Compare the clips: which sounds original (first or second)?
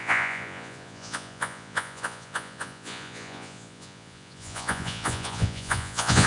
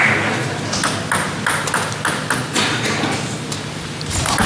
second